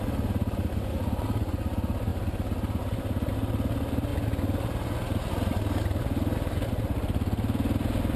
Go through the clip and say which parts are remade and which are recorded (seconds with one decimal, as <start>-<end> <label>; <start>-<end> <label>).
0.0-8.2 recorded